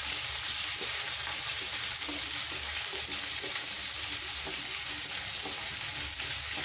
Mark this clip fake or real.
fake